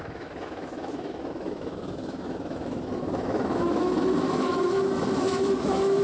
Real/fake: fake